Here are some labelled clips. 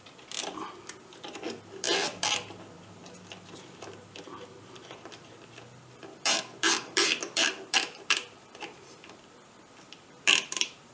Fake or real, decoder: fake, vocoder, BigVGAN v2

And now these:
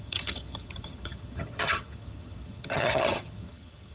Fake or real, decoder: fake, vocoder, HiFi-GAN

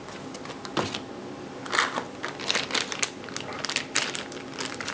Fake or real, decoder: real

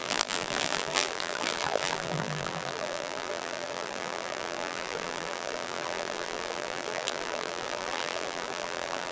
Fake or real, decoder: fake, vocoder, BigVGAN v2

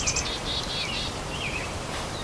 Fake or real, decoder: real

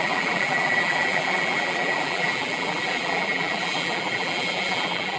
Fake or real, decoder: fake, vocoder, BigVGAN v2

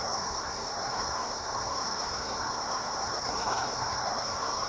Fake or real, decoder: fake, codec, SNAC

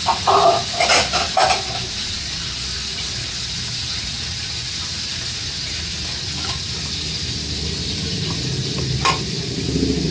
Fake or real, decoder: real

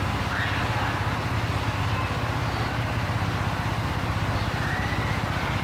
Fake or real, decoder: real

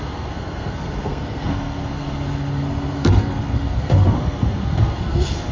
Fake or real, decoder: fake, codec, SNAC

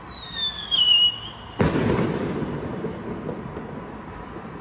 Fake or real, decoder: real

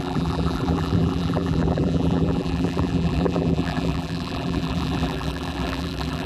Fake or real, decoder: fake, vocoder, BigVGAN v2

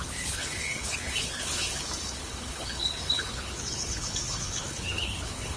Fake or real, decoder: fake, codec, HILCodec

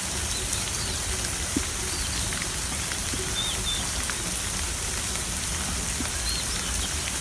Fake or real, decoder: real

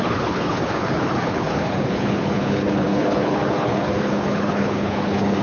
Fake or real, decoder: fake, codec, HILCodec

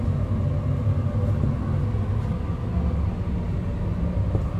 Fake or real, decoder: real